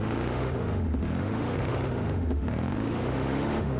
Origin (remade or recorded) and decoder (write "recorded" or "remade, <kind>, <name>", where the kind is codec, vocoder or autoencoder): remade, autoencoder, DAC-VAE